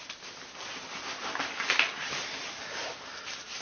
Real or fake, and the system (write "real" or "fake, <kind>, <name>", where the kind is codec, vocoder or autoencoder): real